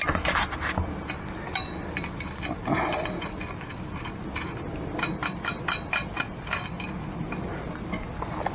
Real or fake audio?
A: real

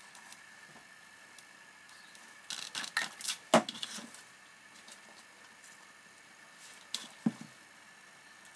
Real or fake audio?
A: real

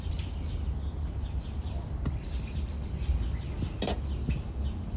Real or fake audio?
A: real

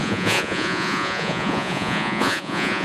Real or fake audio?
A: fake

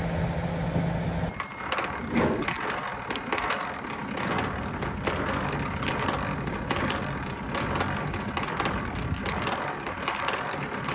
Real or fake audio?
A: real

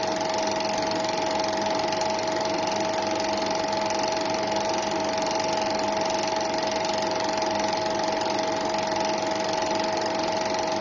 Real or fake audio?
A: real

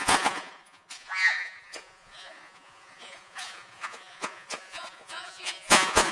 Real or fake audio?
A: fake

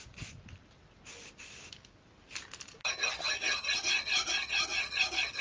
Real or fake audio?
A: real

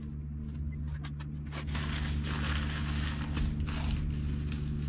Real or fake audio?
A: real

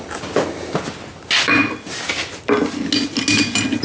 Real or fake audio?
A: real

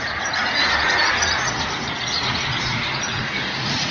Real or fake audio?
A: fake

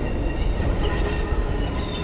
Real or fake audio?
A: real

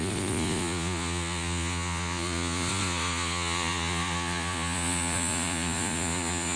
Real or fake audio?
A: fake